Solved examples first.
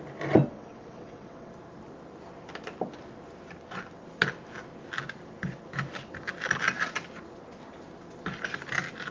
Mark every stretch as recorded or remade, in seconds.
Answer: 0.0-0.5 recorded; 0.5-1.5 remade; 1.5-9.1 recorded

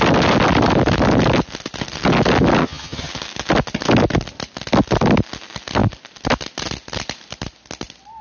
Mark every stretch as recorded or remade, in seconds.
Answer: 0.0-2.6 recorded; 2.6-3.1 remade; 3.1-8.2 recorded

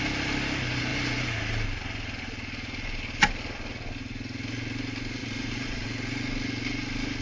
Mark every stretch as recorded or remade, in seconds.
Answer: 0.0-5.2 recorded; 5.2-5.9 remade; 5.9-7.2 recorded